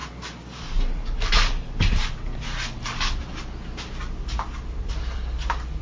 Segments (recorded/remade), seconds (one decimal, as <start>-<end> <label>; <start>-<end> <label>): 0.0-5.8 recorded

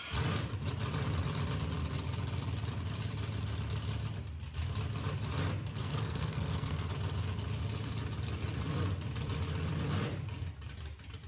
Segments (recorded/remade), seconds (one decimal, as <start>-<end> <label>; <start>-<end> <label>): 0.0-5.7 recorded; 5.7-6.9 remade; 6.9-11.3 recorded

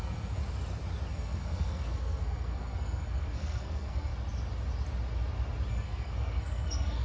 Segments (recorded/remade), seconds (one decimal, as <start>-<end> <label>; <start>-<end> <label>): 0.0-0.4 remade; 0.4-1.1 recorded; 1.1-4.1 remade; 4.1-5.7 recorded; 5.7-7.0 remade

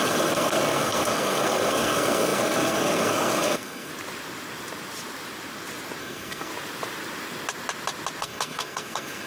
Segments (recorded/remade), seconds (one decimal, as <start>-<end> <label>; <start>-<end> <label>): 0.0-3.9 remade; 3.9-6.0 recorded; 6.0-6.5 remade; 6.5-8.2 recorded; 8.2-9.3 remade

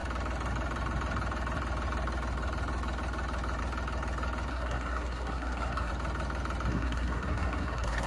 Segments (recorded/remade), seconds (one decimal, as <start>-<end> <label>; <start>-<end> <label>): 0.0-4.5 recorded; 4.5-5.9 remade; 5.9-6.7 recorded; 6.7-8.1 remade

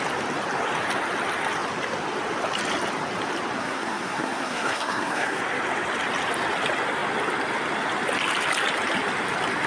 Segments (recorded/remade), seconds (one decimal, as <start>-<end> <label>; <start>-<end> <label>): 0.0-3.6 recorded; 3.6-5.4 remade; 5.4-9.7 recorded

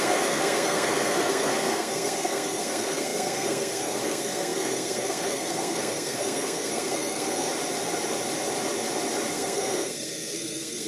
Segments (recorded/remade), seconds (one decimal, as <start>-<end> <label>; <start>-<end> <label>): 0.0-7.5 remade; 7.5-9.3 recorded; 9.3-10.9 remade